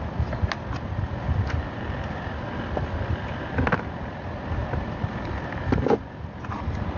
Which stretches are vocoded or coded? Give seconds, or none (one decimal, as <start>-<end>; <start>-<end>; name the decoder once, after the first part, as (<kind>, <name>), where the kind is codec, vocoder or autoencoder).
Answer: 4.6-5.3 (vocoder, BigVGAN v2)